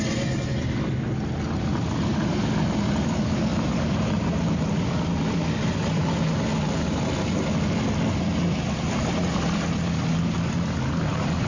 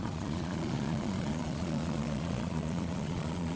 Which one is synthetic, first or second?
second